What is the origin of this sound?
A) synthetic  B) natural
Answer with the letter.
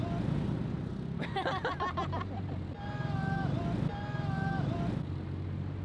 B